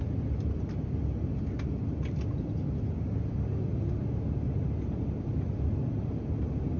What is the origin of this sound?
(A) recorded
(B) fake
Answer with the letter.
A